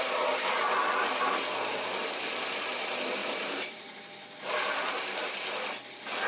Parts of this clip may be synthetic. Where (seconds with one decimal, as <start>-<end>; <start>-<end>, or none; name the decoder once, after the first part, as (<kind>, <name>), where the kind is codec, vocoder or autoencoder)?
3.2-4.0 (vocoder, BigVGAN v2)

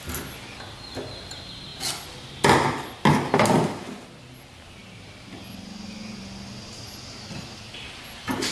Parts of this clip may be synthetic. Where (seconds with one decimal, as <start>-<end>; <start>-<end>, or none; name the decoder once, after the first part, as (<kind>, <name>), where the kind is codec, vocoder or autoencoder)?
none

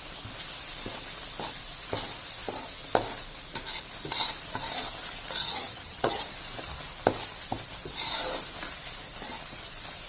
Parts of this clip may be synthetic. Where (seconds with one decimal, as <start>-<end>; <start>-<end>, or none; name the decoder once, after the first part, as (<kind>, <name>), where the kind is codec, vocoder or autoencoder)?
5.4-6.2 (vocoder, HiFi-GAN)